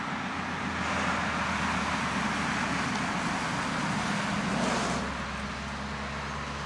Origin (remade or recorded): recorded